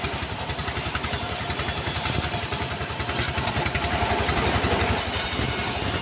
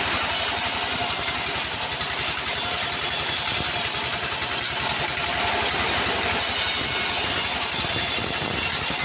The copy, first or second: first